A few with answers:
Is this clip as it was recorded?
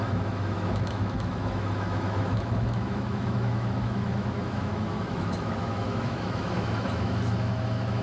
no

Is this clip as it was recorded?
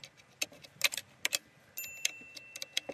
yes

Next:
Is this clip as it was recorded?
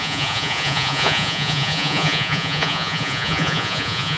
no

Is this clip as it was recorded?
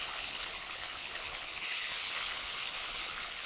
no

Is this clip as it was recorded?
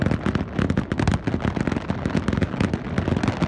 yes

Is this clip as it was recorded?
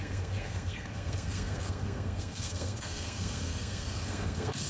no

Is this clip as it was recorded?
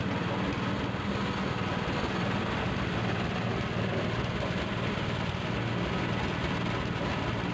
yes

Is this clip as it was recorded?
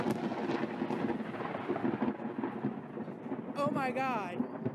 yes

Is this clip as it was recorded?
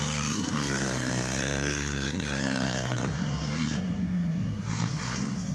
no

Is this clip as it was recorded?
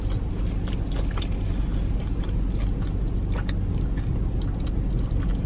yes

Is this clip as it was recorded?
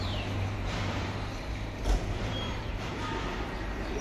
no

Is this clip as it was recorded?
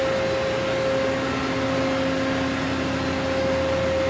yes